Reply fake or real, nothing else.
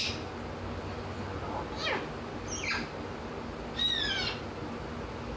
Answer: real